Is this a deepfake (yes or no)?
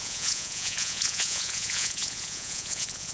yes